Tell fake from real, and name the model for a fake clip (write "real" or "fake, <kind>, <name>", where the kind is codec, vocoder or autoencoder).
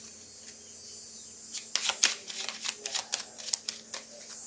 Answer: real